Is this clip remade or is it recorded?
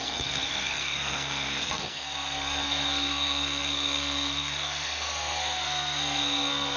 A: remade